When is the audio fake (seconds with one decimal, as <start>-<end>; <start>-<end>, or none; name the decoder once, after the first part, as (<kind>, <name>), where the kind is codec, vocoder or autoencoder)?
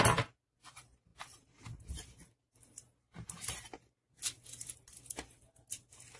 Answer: none